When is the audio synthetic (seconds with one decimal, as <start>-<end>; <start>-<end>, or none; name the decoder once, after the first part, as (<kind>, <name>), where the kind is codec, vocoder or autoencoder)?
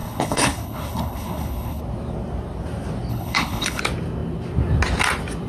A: 0.0-1.8 (codec, HILCodec); 3.1-3.8